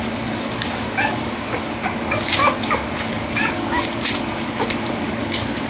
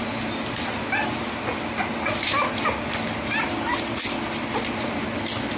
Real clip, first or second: second